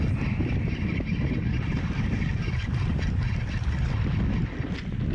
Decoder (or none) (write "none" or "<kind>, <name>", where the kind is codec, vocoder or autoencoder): none